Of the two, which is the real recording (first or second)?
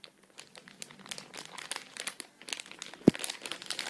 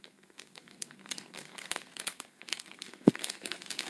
first